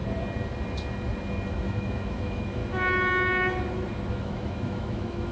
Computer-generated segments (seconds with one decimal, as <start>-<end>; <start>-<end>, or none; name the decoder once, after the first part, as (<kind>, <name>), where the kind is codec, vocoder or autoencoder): 1.5-2.6 (autoencoder, DAC-VAE); 4.1-5.3